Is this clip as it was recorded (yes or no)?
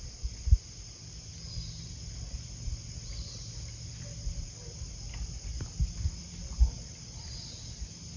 yes